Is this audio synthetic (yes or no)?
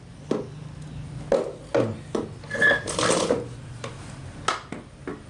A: no